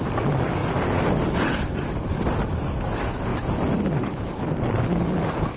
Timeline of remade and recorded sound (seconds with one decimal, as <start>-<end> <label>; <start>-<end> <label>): 0.0-3.3 recorded; 3.3-4.5 remade; 4.5-5.6 recorded